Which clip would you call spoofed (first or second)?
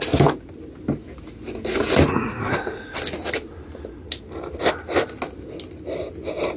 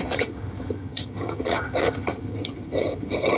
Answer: second